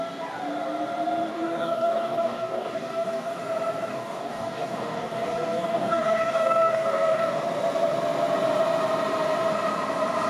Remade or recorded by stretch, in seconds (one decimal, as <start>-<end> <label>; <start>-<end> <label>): 0.0-1.3 recorded; 1.3-3.4 remade; 3.4-3.9 recorded; 3.9-7.4 remade; 7.4-10.3 recorded